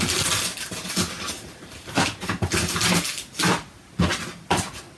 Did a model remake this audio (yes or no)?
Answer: no